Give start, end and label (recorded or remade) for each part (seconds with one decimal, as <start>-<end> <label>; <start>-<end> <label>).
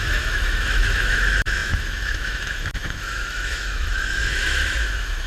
0.0-5.3 remade